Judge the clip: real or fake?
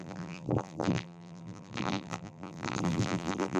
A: fake